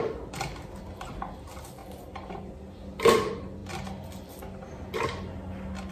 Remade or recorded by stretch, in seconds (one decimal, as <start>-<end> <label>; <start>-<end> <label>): 0.0-1.8 recorded; 1.8-2.5 remade; 2.5-5.9 recorded